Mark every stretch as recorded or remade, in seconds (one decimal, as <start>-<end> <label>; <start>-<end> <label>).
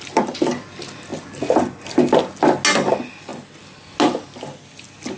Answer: 0.0-5.2 recorded